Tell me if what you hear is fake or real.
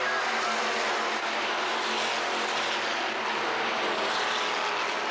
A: real